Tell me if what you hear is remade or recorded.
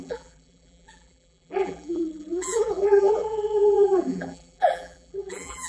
remade